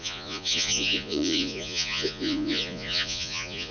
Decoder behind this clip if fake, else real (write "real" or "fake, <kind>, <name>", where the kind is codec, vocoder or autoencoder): fake, vocoder, Vocos